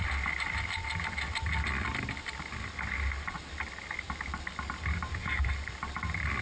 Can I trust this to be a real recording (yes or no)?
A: yes